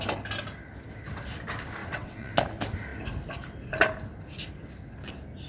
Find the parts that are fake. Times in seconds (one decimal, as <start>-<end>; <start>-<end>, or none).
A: 1.8-2.3